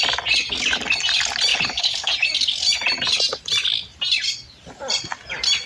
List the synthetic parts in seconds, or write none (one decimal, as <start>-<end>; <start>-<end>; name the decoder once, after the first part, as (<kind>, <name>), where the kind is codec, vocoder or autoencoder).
1.5-2.1 (codec, HILCodec)